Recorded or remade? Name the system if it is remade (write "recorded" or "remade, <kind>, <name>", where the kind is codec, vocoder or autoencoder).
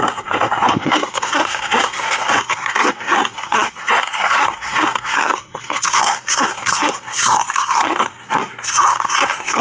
remade, codec, SNAC